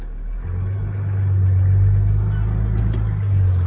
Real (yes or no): yes